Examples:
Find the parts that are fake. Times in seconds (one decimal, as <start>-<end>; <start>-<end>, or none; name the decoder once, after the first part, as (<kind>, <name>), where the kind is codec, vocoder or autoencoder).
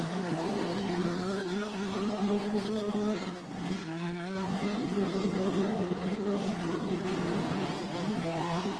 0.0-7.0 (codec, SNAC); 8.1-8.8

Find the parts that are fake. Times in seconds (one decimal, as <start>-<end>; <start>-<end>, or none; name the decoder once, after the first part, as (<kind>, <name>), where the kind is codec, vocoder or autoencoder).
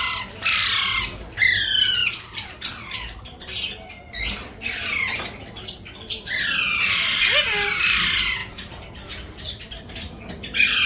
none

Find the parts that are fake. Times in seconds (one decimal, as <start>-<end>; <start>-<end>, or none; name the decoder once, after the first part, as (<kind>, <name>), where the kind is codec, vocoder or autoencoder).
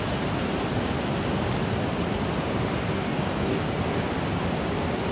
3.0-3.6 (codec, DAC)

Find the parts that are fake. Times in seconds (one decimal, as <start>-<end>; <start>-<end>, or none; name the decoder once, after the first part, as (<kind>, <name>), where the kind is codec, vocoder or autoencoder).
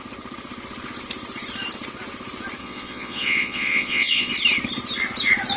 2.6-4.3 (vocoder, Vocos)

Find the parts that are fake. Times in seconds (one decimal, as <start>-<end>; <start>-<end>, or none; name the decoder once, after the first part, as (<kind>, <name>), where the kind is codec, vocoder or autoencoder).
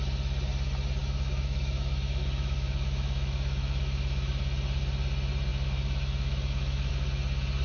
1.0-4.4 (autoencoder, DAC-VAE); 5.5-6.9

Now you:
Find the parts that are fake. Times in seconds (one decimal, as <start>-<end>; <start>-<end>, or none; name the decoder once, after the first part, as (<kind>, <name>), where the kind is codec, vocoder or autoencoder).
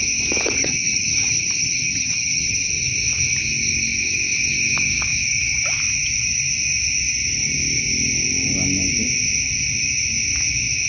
0.6-2.7 (vocoder, HiFi-GAN)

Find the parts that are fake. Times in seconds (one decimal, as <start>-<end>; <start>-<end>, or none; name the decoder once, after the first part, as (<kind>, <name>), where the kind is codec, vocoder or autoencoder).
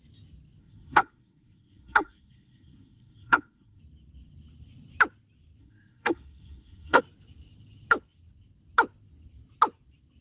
0.6-3.8 (codec, SNAC); 5.6-7.0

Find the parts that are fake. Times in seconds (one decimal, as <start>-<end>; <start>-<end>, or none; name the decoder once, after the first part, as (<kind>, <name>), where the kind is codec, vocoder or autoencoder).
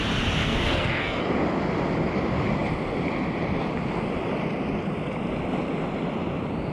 0.4-1.2 (codec, SNAC)